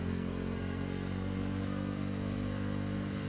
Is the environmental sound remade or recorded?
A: remade